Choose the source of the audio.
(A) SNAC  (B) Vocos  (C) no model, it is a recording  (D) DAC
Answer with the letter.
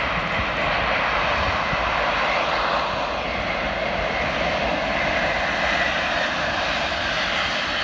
C